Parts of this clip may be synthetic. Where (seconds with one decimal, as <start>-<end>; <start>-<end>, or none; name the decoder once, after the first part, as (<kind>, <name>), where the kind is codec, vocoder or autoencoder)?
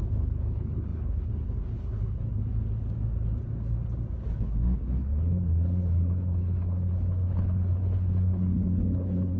0.0-2.4 (codec, HILCodec); 4.3-9.4